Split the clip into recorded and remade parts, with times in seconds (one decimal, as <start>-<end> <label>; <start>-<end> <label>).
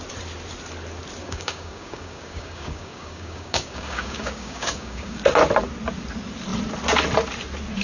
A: 0.0-1.2 recorded; 1.2-5.2 remade; 5.2-7.8 recorded